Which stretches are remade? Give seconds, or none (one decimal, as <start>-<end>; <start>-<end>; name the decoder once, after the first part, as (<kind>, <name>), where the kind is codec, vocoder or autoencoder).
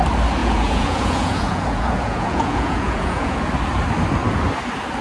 0.4-3.4 (vocoder, Vocos)